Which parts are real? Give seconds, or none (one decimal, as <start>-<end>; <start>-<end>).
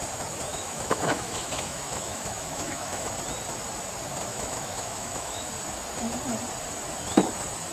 0.0-0.5; 3.1-4.3; 5.5-7.7